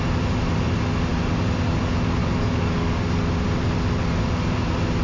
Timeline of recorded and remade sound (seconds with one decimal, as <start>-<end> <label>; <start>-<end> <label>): 0.0-2.2 recorded; 2.2-3.2 remade; 3.2-5.0 recorded